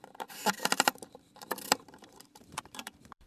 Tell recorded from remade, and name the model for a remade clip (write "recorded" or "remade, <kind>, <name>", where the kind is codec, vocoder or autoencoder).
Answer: remade, vocoder, BigVGAN v2